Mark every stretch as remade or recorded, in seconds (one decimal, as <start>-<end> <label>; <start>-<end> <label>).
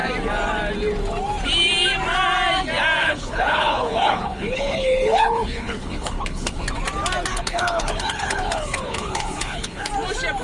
0.0-3.0 recorded; 3.0-6.6 remade; 6.6-7.3 recorded; 7.3-9.9 remade; 9.9-10.4 recorded